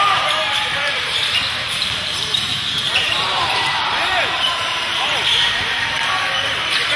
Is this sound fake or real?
fake